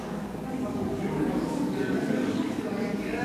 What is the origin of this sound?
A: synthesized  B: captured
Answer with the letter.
A